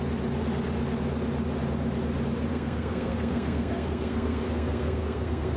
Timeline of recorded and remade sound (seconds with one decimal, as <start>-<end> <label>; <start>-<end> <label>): 0.0-2.5 recorded; 2.5-5.6 remade